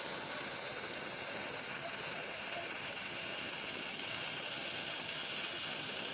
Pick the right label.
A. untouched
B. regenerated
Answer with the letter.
B